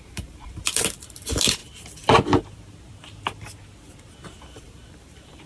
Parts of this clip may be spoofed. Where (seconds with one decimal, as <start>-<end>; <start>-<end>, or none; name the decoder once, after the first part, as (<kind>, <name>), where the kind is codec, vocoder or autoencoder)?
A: 0.0-1.6 (vocoder, BigVGAN v2); 4.4-5.5